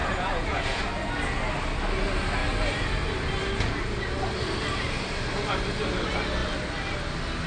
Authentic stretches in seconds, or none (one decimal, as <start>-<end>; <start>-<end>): 0.8-7.5

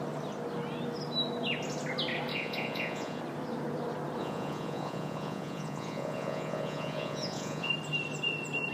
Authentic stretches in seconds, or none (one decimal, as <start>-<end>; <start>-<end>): 0.0-2.3; 3.2-4.2; 7.7-8.7